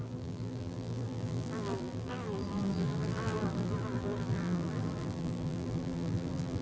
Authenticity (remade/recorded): remade